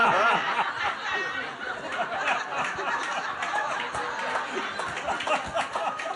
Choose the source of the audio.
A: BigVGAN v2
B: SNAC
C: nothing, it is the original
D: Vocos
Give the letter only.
C